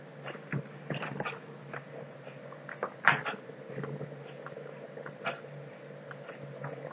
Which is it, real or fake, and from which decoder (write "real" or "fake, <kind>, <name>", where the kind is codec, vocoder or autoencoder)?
real